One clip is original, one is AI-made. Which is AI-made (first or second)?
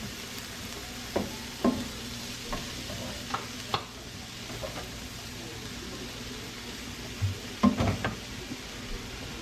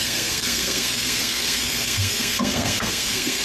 second